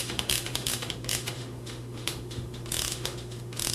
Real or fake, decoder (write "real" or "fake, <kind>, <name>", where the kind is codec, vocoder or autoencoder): fake, autoencoder, DAC-VAE